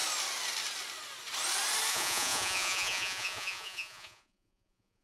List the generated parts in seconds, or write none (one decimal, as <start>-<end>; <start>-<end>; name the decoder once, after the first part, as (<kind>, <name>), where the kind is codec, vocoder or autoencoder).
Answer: 1.9-5.0 (vocoder, Vocos)

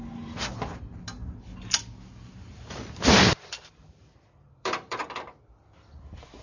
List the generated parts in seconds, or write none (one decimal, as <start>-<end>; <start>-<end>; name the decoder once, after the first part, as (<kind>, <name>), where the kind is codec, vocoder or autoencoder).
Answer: 2.5-5.0 (vocoder, BigVGAN v2)

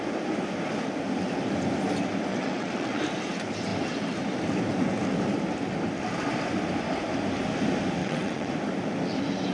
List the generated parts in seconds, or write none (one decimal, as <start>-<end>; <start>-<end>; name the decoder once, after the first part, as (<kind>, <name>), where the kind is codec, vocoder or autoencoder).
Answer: 2.3-3.0 (vocoder, WaveNeXt); 8.0-8.5

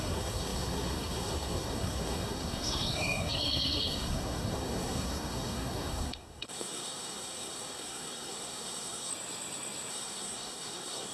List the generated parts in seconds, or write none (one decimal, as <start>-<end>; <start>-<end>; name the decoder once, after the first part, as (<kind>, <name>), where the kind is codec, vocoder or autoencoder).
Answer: 0.0-9.1 (codec, SNAC); 9.9-11.1

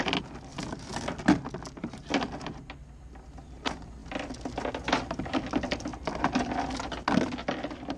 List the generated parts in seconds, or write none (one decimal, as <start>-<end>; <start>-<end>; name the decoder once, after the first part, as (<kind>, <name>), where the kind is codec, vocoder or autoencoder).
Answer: 0.5-1.2 (vocoder, BigVGAN v2)